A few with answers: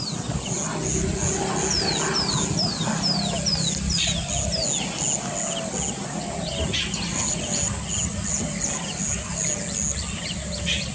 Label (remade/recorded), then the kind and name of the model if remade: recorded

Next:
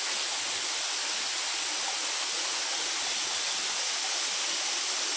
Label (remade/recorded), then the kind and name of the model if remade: recorded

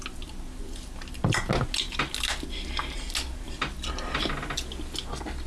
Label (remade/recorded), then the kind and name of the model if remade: recorded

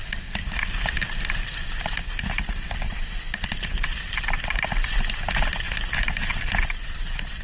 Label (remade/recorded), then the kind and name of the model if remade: recorded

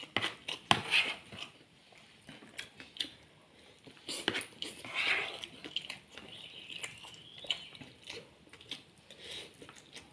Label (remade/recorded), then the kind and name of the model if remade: recorded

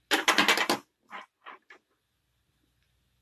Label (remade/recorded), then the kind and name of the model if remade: recorded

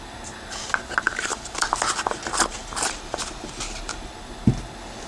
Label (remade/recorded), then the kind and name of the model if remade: recorded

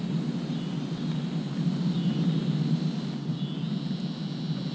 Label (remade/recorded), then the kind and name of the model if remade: recorded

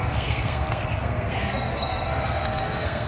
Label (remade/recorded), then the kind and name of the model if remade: remade, codec, SNAC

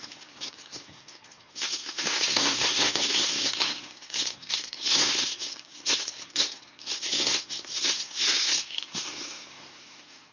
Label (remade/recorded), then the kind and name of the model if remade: remade, codec, SNAC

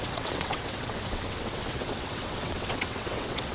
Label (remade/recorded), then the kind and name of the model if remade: remade, vocoder, WaveNeXt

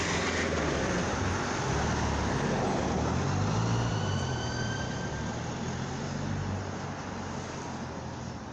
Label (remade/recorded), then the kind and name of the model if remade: recorded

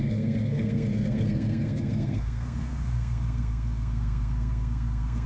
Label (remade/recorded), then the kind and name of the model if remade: remade, codec, SNAC